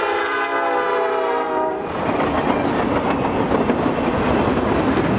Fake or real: real